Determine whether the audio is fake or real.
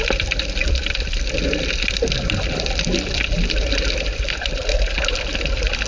real